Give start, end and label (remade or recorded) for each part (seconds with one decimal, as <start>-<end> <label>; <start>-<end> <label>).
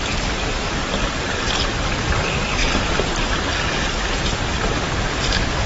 0.0-0.8 recorded; 0.8-1.4 remade; 1.4-2.6 recorded; 2.6-3.1 remade; 3.1-5.7 recorded